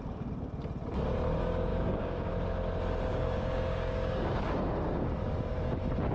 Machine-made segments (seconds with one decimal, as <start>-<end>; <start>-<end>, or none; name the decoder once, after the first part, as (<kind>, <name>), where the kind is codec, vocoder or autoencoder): 1.7-2.3 (codec, DAC); 3.1-5.0